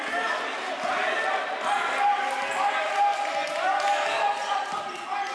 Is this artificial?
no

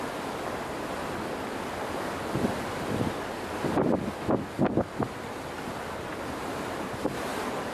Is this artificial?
no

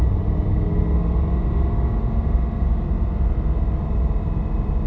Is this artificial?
no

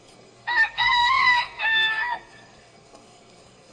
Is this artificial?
yes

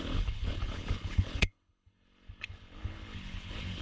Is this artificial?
yes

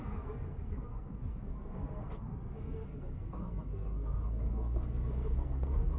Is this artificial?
yes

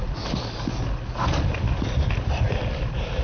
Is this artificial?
no